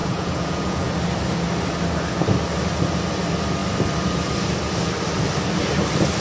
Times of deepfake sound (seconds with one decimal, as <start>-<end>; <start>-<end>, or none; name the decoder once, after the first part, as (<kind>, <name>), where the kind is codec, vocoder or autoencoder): 0.0-0.9 (vocoder, Vocos)